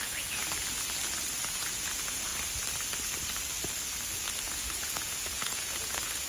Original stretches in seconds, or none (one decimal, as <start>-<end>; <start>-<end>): 0.4-1.5; 2.3-4.4